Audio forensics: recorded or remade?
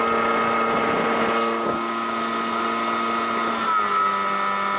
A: recorded